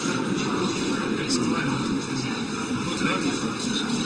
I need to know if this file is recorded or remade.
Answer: recorded